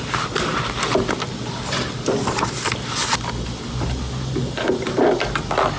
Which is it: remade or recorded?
recorded